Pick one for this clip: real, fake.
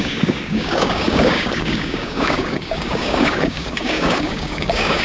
fake